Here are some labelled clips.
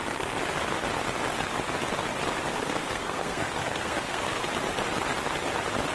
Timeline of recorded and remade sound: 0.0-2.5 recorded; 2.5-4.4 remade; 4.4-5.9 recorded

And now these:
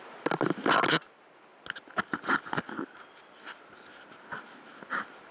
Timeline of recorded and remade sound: 0.0-5.3 recorded